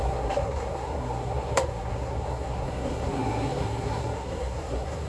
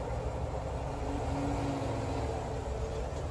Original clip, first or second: second